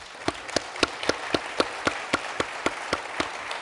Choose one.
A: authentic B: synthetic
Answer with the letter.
A